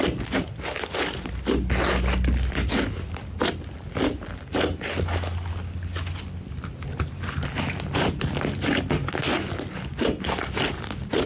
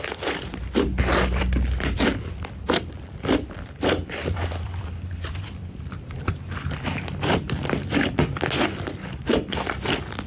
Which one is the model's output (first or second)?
second